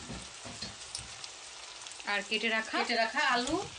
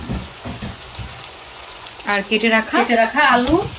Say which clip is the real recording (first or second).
first